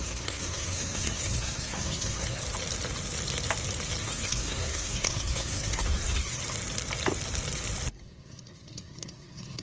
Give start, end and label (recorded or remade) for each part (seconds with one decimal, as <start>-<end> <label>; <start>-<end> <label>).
0.0-2.4 remade; 2.4-4.0 recorded; 4.0-6.4 remade; 6.4-8.0 recorded; 8.0-9.6 remade